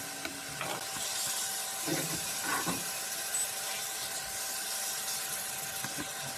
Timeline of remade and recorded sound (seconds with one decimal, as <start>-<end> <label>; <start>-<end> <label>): 0.0-1.9 recorded; 1.9-4.2 remade; 4.2-6.4 recorded